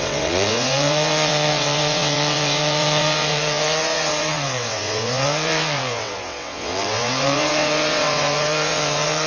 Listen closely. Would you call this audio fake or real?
fake